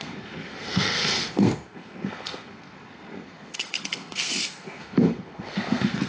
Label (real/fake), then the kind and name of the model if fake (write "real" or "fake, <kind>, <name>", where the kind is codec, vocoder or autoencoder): fake, codec, SNAC